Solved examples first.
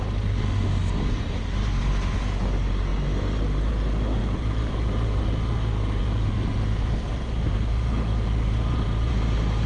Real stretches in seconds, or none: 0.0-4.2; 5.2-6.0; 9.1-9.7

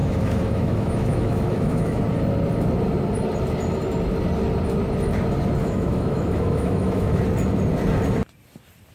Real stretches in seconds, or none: 2.0-5.6; 7.2-8.9

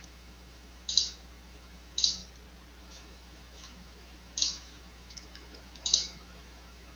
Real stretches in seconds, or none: 2.2-2.8

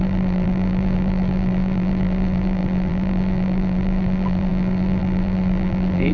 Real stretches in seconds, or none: none

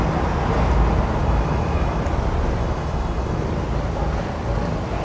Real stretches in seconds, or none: 0.0-1.2; 2.0-2.6; 3.4-5.0